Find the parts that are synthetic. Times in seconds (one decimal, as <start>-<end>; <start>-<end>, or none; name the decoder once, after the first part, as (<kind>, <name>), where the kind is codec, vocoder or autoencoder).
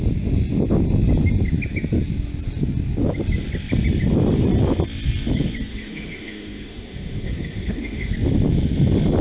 5.7-8.1 (autoencoder, DAC-VAE)